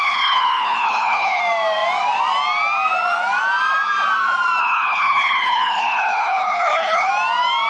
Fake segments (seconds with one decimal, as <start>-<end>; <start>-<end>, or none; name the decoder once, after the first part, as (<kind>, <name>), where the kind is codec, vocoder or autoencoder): 0.0-1.4 (codec, HILCodec); 4.6-7.1